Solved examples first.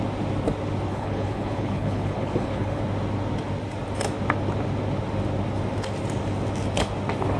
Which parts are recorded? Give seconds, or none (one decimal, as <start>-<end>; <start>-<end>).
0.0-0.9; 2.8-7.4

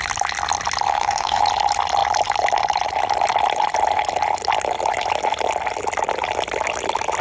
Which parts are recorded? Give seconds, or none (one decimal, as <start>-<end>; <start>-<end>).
0.0-0.9; 1.4-7.2

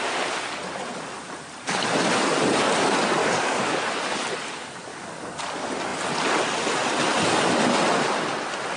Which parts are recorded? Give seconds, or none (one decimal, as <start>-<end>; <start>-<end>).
0.0-3.2; 3.8-4.9; 5.4-8.8

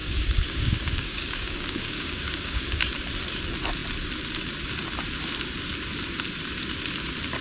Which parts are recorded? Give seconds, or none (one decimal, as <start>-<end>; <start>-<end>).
2.8-7.4